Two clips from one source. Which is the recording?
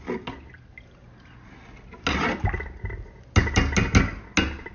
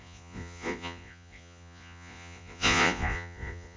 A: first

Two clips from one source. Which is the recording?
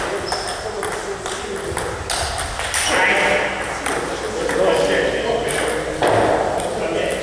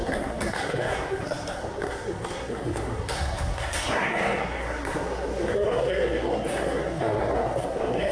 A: first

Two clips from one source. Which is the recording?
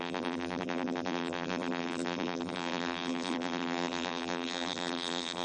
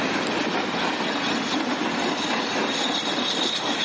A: second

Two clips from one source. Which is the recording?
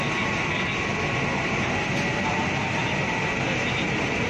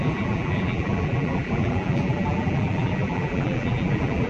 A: first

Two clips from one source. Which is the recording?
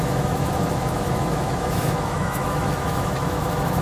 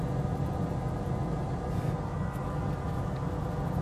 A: second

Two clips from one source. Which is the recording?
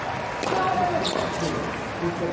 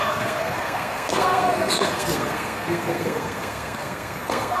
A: first